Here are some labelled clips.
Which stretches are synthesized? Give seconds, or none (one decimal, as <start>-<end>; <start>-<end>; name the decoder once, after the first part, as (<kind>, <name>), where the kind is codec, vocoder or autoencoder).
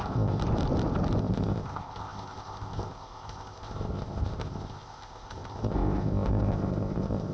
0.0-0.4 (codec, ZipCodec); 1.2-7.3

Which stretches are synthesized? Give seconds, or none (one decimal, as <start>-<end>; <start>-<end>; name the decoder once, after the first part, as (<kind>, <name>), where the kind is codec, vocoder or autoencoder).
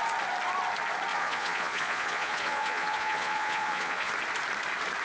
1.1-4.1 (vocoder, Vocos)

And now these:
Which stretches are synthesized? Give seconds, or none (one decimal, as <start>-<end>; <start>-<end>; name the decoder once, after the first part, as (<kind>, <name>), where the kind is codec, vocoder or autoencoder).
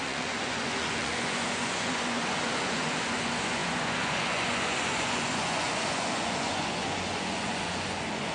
0.0-8.3 (vocoder, Vocos)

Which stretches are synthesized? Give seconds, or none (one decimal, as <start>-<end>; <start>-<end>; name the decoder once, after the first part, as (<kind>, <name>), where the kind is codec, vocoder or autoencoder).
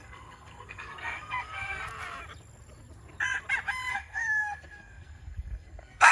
0.0-1.8 (codec, SNAC); 3.9-6.1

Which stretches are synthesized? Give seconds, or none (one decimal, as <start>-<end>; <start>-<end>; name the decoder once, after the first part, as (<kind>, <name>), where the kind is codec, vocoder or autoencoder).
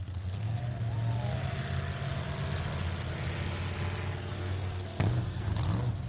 0.0-0.6 (codec, SNAC); 4.3-5.5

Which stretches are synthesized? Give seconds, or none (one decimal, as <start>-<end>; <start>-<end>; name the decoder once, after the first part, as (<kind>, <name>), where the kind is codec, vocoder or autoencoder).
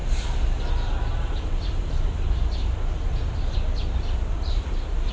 none